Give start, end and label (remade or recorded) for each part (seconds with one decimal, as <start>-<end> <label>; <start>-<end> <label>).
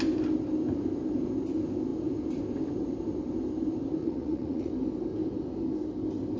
0.0-4.0 recorded; 4.0-4.7 remade; 4.7-6.4 recorded